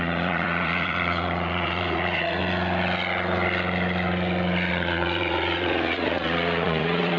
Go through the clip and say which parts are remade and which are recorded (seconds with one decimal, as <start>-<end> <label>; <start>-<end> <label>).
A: 0.0-2.4 remade; 2.4-4.7 recorded; 4.7-7.2 remade